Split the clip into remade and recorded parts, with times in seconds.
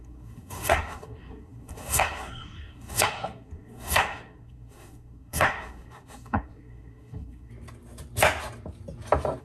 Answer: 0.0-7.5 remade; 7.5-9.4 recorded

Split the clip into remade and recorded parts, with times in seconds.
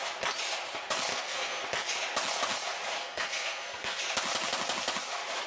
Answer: 0.0-1.1 recorded; 1.1-1.6 remade; 1.6-3.0 recorded; 3.0-4.0 remade; 4.0-5.5 recorded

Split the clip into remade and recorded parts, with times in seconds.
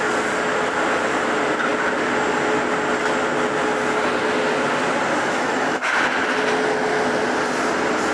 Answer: 0.0-5.2 recorded; 5.2-5.9 remade; 5.9-8.1 recorded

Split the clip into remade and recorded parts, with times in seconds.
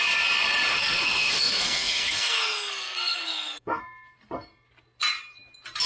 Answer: 0.0-0.7 recorded; 0.7-3.8 remade; 3.8-5.9 recorded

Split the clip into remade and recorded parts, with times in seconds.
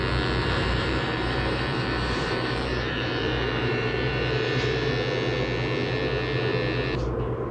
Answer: 0.0-0.4 recorded; 0.4-4.9 remade; 4.9-7.5 recorded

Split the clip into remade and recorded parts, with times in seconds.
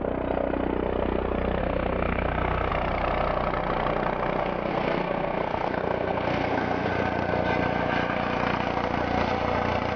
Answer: 0.0-1.6 recorded; 1.6-2.7 remade; 2.7-4.7 recorded; 4.7-6.9 remade; 6.9-10.0 recorded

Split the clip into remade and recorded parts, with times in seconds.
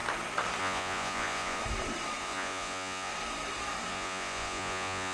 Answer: 0.0-0.6 recorded; 0.6-1.6 remade; 1.6-2.2 recorded; 2.2-3.1 remade; 3.1-3.9 recorded; 3.9-5.1 remade